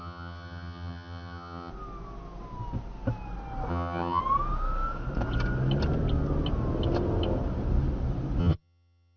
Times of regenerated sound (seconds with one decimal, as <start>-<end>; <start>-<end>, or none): 0.0-1.7; 3.7-4.2; 8.4-9.2

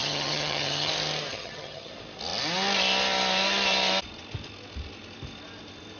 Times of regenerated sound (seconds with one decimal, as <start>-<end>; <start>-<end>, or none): 0.0-0.9; 1.3-1.9

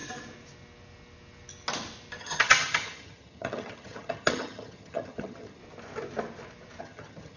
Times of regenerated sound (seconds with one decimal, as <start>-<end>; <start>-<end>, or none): 2.2-5.6; 6.8-7.4

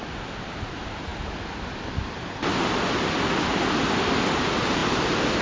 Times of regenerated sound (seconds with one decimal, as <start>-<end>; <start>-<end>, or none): none

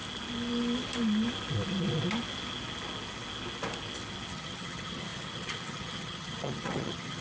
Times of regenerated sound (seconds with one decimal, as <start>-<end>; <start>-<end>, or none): 4.3-7.2